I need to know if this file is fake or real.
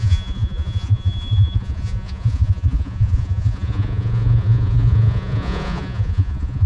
fake